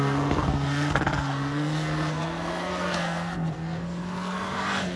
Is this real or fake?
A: fake